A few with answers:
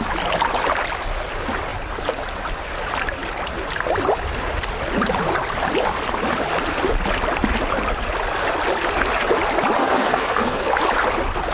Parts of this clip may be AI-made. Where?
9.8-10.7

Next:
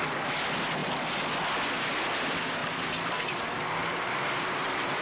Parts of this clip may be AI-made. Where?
2.6-3.4; 3.8-5.0

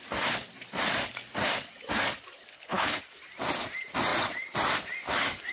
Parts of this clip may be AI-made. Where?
2.5-3.0

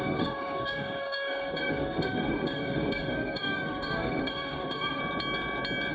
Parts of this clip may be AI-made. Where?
0.0-5.0

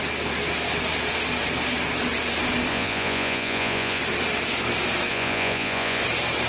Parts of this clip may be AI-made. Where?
2.7-4.0; 5.1-6.0